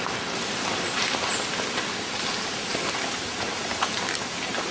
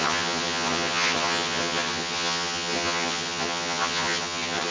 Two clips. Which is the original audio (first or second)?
first